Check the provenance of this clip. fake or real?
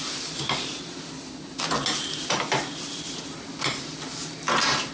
real